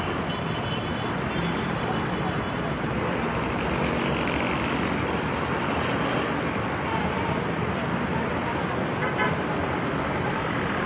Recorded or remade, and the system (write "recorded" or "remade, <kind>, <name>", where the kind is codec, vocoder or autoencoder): recorded